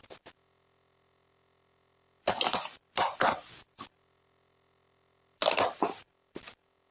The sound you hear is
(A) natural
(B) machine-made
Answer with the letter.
A